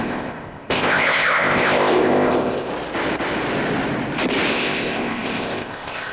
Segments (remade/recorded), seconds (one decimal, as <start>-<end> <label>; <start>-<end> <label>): 0.0-2.7 remade; 2.7-4.5 recorded; 4.5-6.1 remade